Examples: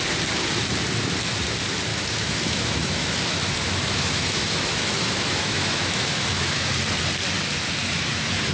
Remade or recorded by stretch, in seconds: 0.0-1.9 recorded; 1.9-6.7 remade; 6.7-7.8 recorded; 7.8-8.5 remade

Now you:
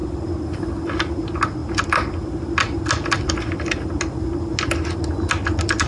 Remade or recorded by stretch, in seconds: 0.0-5.9 recorded

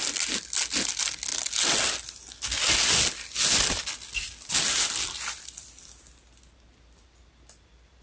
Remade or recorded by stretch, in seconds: 0.0-8.0 recorded

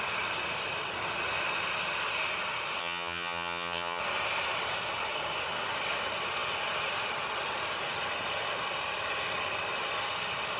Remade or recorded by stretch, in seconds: 0.0-2.8 recorded; 2.8-4.0 remade; 4.0-10.6 recorded

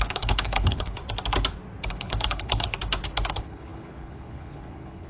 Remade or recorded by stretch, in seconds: 0.0-1.0 remade; 1.0-1.9 recorded; 1.9-2.7 remade; 2.7-3.3 recorded; 3.3-5.1 remade

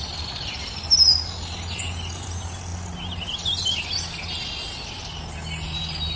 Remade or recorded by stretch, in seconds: 0.0-6.2 recorded